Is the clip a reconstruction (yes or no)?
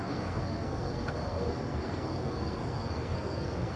yes